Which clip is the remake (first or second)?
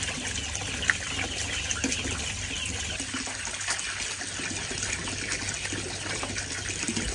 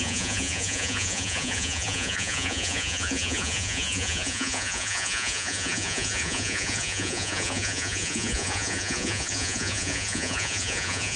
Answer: second